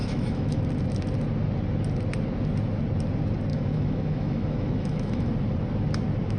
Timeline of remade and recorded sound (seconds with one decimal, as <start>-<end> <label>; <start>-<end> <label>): 0.0-0.6 remade; 0.6-3.5 recorded; 3.5-5.3 remade; 5.3-6.4 recorded